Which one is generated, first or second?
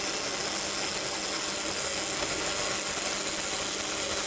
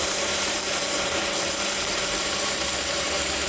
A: second